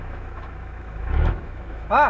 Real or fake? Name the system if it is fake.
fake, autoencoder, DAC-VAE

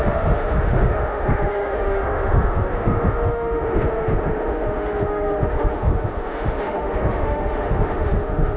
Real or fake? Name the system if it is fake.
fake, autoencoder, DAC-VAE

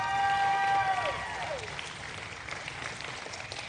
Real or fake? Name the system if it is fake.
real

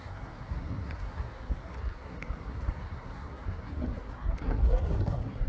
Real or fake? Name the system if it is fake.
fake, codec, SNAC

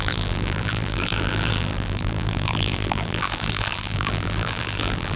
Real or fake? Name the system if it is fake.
fake, vocoder, BigVGAN v2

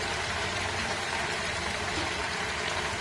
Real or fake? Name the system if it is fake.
fake, vocoder, BigVGAN v2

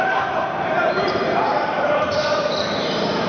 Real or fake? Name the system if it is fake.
fake, vocoder, BigVGAN v2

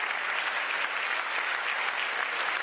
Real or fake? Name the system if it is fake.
real